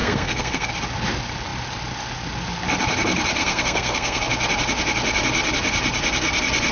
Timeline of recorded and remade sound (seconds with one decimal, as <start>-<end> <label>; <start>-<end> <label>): 0.0-0.7 remade; 0.7-3.4 recorded; 3.4-4.2 remade; 4.2-6.7 recorded